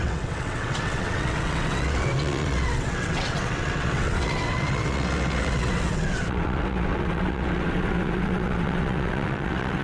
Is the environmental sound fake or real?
fake